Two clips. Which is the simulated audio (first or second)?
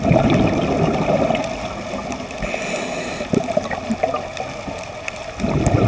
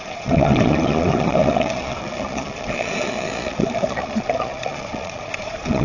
second